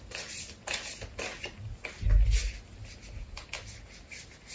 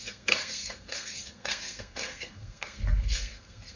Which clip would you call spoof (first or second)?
second